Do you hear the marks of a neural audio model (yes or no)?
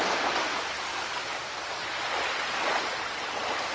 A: no